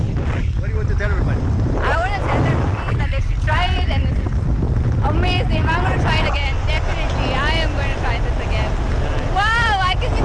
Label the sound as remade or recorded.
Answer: recorded